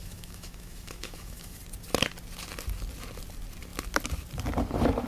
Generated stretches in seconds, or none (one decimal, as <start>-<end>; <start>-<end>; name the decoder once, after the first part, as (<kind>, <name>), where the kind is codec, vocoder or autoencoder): 0.0-1.6 (autoencoder, DAC-VAE)